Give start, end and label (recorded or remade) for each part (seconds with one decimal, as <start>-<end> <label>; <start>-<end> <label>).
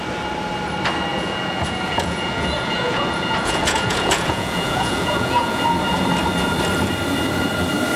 0.0-1.1 recorded; 1.1-5.6 remade; 5.6-8.0 recorded